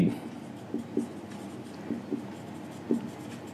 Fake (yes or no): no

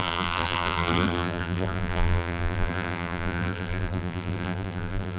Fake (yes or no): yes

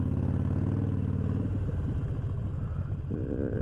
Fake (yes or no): no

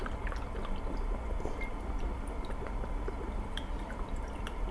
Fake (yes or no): yes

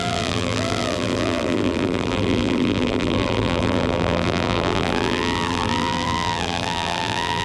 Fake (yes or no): yes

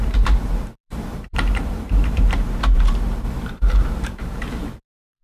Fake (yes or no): yes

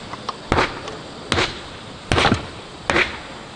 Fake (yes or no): no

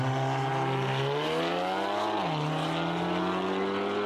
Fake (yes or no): no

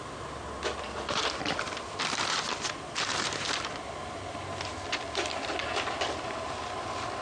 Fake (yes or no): yes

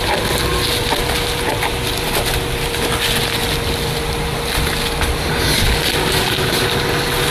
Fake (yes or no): no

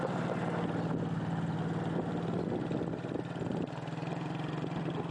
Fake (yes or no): no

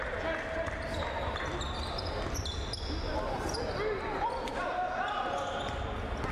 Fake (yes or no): no